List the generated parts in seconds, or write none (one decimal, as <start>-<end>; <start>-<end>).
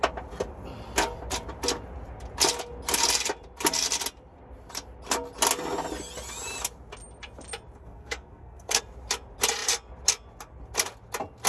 7.8-8.8